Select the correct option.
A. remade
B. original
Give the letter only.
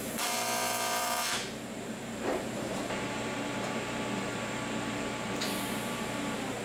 A